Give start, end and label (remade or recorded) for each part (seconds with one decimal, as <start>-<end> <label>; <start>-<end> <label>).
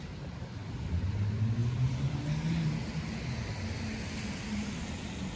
0.0-5.4 recorded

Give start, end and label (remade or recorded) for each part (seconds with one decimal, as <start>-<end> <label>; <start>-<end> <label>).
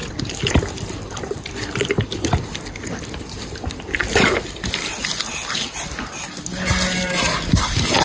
0.0-8.0 recorded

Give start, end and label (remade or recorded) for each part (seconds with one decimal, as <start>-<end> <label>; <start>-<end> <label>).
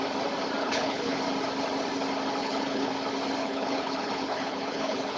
0.0-0.6 recorded; 0.6-1.2 remade; 1.2-2.4 recorded; 2.4-2.9 remade; 2.9-3.4 recorded; 3.4-5.2 remade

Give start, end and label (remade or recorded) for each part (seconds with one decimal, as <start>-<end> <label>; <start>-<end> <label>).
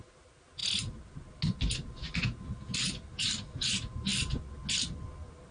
0.0-5.5 recorded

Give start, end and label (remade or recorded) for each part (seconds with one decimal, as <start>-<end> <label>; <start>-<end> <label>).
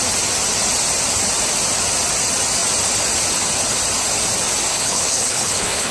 0.0-4.7 recorded; 4.7-5.9 remade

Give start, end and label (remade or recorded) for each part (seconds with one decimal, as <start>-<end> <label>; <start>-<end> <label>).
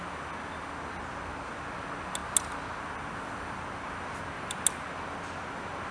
0.0-5.9 recorded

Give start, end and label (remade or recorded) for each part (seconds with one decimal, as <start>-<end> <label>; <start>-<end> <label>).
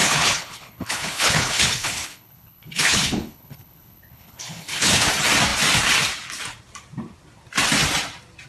0.0-5.1 remade; 5.1-8.5 recorded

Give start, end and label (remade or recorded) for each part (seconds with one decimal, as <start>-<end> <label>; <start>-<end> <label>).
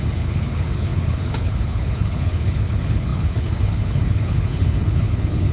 0.0-5.5 remade